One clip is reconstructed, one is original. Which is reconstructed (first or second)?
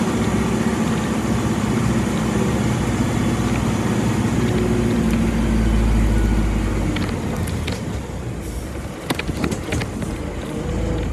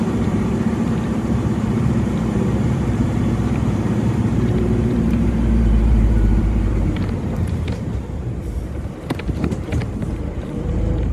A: second